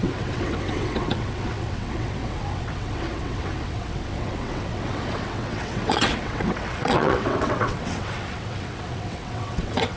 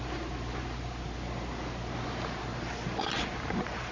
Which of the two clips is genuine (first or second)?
second